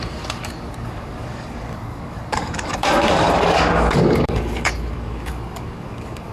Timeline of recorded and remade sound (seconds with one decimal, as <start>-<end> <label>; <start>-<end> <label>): 0.0-6.3 remade